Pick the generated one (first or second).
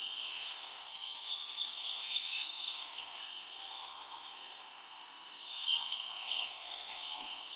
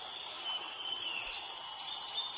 first